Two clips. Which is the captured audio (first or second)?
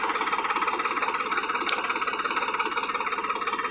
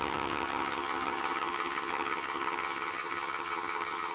first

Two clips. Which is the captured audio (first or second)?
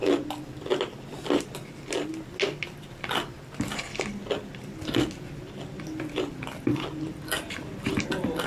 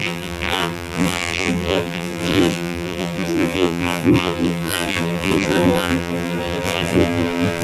first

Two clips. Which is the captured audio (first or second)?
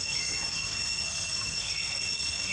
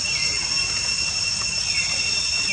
second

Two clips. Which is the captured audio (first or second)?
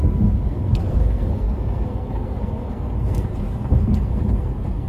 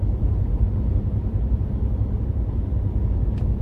second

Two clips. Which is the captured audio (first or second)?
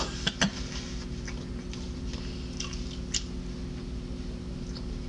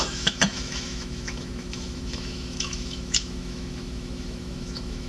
first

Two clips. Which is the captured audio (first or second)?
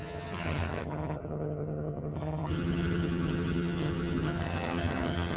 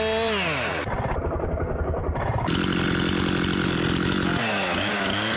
second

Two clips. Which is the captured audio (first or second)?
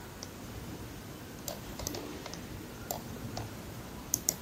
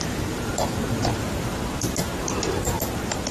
first